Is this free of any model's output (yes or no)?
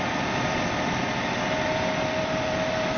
no